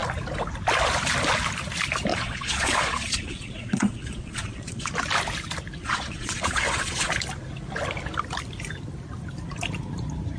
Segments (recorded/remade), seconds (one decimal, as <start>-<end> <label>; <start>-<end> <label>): 0.0-2.1 recorded; 2.1-4.9 remade; 4.9-5.8 recorded; 5.8-7.1 remade; 7.1-10.4 recorded